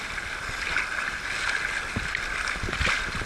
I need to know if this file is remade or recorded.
recorded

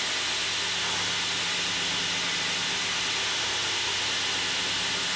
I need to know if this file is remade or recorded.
recorded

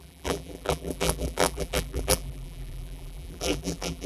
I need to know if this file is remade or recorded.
remade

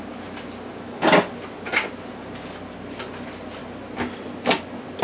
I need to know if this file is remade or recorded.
recorded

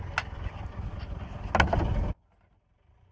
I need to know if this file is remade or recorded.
recorded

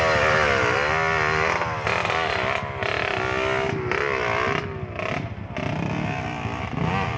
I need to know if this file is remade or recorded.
recorded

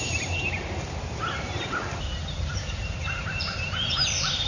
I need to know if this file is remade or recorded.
remade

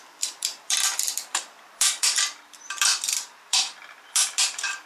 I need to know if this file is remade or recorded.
remade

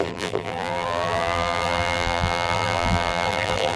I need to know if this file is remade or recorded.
remade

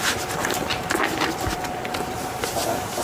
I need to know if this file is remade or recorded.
remade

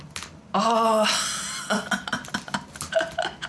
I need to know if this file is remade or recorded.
recorded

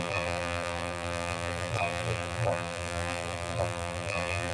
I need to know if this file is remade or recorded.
remade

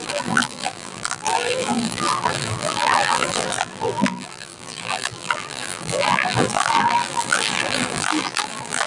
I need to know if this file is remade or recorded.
remade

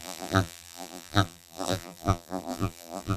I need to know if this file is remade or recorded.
remade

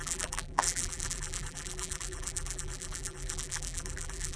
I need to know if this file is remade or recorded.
remade